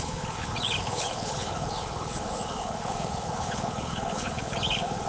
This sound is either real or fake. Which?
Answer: fake